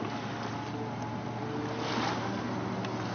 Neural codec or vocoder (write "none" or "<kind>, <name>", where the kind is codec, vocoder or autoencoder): none